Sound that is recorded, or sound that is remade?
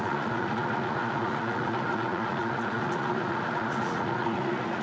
remade